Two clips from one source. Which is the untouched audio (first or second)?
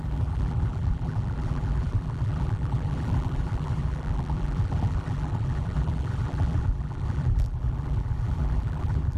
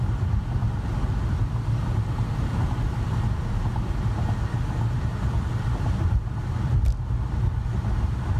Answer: second